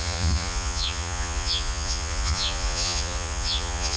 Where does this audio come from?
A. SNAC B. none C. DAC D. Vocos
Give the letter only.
D